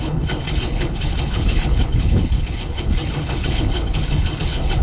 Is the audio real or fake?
fake